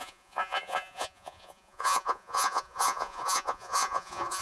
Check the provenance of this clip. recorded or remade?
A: remade